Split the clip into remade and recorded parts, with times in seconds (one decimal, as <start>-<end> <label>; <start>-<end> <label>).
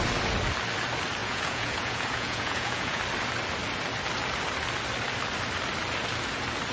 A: 0.0-1.2 recorded; 1.2-3.0 remade; 3.0-6.7 recorded